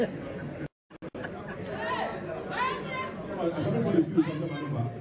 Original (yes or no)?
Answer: yes